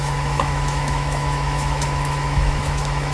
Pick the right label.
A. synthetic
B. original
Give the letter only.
A